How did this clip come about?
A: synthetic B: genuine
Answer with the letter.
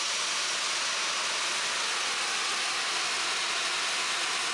B